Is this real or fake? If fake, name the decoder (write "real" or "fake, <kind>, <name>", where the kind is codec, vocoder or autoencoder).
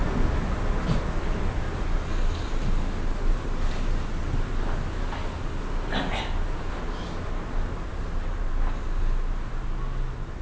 real